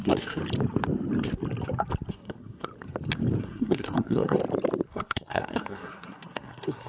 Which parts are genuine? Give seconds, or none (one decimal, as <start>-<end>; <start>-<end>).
0.4-2.1; 2.7-3.4; 4.4-4.9